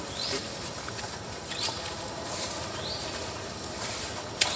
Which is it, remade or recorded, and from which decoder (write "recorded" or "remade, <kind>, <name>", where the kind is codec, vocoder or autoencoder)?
recorded